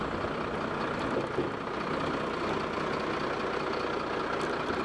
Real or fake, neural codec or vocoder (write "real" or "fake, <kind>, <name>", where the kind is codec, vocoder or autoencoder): real